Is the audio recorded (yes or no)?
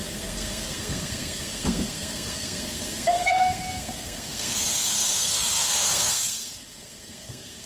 no